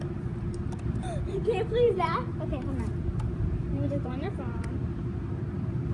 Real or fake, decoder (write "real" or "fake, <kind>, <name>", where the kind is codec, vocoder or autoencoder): fake, vocoder, BigVGAN v2